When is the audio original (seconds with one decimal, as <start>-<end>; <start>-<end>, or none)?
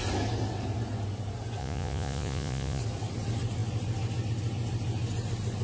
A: 0.0-1.6; 2.8-5.6